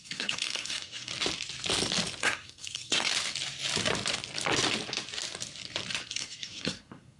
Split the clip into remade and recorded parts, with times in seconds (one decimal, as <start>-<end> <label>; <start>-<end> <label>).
0.0-1.1 remade; 1.1-2.2 recorded; 2.2-3.1 remade; 3.1-6.0 recorded; 6.0-7.2 remade